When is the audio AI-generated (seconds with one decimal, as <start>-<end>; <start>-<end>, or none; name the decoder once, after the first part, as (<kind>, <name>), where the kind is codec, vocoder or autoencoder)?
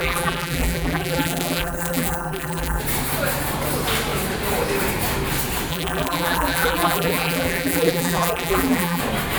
0.0-2.8 (vocoder, BigVGAN v2); 5.7-9.0